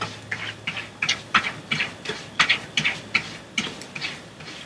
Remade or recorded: recorded